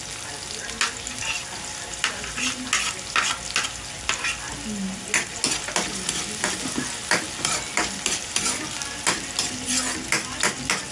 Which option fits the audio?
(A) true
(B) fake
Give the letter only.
A